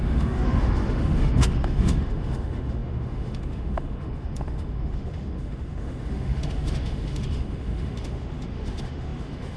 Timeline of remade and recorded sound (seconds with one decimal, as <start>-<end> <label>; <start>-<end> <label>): 0.0-9.6 remade